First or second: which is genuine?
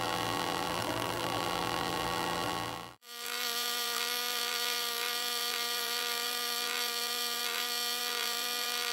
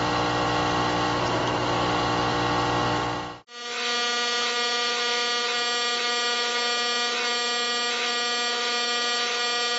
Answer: second